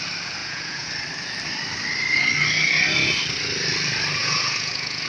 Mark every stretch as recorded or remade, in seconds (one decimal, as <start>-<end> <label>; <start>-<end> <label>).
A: 0.0-0.4 recorded; 0.4-0.9 remade; 0.9-4.2 recorded; 4.2-5.1 remade